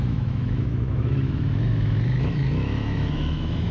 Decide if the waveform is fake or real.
fake